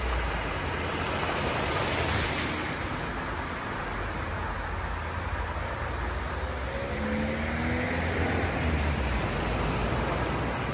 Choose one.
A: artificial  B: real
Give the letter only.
B